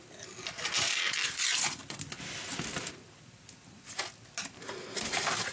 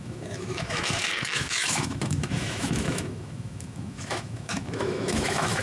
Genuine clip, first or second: first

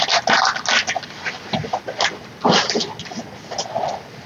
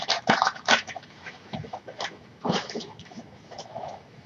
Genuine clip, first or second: first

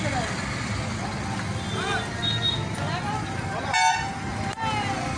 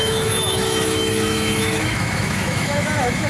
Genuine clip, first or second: first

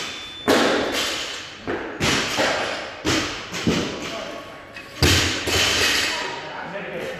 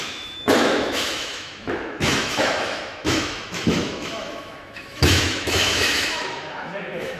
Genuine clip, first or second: first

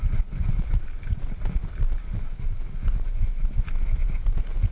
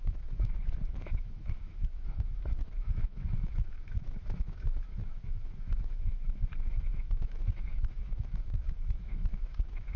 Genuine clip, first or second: first